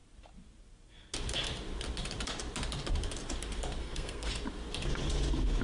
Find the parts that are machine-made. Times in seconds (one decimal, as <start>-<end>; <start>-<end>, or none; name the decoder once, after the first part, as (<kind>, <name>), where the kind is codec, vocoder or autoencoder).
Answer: 3.8-4.3 (codec, SNAC)